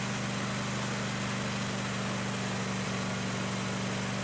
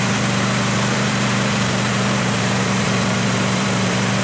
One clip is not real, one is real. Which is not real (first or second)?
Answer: second